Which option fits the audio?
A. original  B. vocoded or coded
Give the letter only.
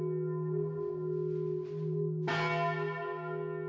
A